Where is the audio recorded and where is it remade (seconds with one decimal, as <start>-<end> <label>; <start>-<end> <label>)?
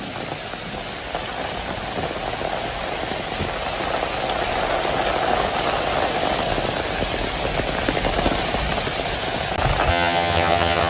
0.0-9.9 recorded; 9.9-10.9 remade